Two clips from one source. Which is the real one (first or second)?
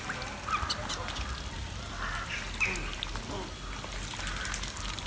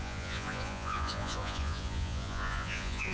first